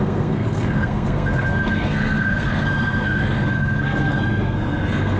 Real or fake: fake